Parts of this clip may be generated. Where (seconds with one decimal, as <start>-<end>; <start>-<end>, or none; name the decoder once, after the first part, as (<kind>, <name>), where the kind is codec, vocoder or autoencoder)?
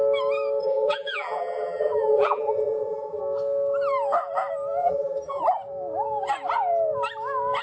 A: 0.6-3.2 (vocoder, BigVGAN v2); 4.8-5.4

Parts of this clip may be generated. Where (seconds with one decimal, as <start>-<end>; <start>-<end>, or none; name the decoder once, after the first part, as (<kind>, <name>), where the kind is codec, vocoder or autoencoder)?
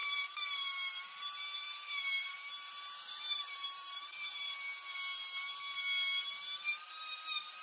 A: 0.0-4.5 (vocoder, BigVGAN v2)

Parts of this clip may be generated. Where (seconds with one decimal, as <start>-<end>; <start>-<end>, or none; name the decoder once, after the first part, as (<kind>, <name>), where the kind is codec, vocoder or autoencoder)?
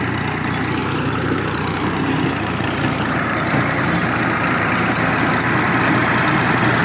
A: 0.8-4.9 (vocoder, BigVGAN v2)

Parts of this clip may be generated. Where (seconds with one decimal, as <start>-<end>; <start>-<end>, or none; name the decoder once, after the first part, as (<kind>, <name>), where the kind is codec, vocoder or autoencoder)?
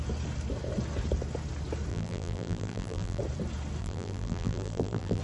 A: 1.9-3.2 (vocoder, BigVGAN v2); 3.8-5.2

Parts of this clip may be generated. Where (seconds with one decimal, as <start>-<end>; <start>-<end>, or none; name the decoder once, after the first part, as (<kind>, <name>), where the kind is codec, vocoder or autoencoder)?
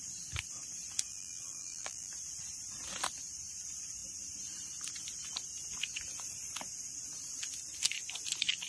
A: 1.1-2.1 (vocoder, BigVGAN v2)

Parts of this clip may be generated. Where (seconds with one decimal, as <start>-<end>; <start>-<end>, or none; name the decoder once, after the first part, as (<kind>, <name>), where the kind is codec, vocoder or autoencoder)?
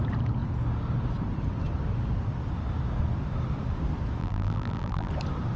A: 4.2-5.1 (vocoder, BigVGAN v2)